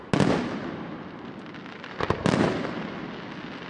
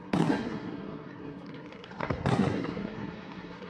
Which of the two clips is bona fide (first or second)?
first